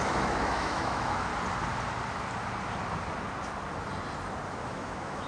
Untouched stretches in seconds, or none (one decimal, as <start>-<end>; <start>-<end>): 1.3-4.5